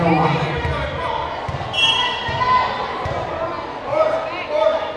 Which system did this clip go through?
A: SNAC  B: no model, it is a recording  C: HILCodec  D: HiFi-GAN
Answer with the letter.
B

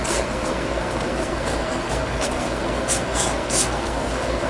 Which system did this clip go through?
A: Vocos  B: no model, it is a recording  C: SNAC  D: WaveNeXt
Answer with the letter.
C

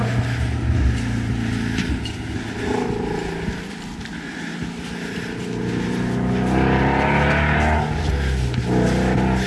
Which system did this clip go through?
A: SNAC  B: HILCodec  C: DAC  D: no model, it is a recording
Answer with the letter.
D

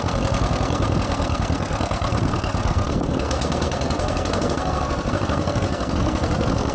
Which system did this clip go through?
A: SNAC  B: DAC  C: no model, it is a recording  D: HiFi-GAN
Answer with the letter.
A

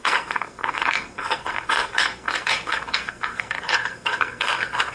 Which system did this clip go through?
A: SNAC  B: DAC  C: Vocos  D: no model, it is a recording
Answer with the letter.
A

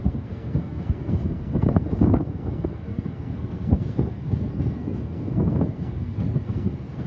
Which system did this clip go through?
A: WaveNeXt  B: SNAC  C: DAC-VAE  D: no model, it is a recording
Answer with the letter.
B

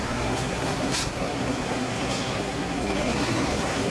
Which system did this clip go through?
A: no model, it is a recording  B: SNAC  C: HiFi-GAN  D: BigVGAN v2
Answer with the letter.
B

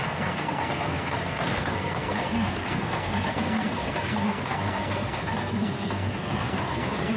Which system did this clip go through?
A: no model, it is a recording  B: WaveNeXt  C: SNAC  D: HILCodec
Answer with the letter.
C